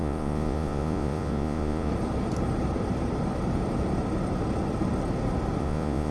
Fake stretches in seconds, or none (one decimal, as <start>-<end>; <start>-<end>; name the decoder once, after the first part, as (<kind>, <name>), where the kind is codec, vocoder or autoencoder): 0.0-1.9 (vocoder, Vocos); 5.6-6.1